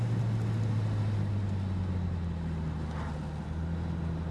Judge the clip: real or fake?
real